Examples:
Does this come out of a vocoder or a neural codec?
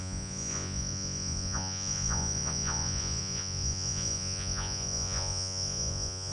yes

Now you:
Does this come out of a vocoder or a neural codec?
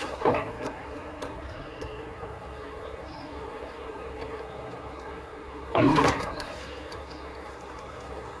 yes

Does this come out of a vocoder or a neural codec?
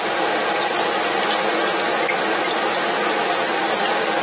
no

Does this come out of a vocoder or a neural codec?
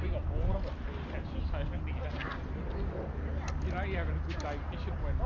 no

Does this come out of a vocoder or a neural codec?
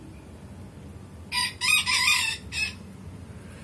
no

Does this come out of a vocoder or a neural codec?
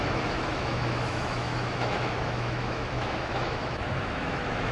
yes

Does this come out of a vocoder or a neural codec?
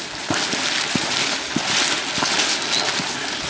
no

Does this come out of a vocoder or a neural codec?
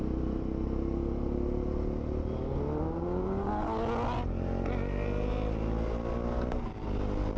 no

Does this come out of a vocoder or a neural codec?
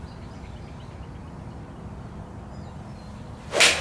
no